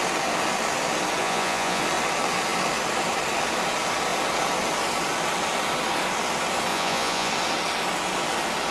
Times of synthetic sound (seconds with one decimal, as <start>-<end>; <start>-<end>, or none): 1.2-1.8; 6.7-7.3